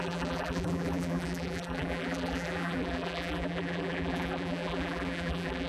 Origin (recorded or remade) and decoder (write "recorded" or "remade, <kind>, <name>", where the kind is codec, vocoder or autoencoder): remade, vocoder, BigVGAN v2